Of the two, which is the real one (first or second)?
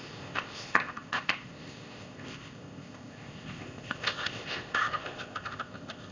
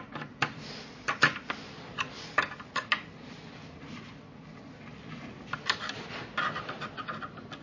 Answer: second